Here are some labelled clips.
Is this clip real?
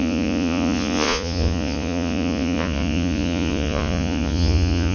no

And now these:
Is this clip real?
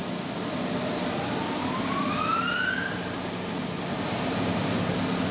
yes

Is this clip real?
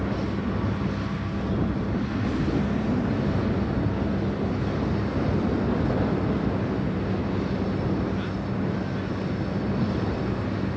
yes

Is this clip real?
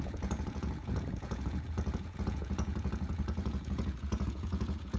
no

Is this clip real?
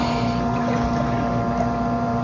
yes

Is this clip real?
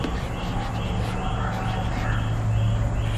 yes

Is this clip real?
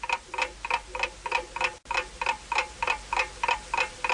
yes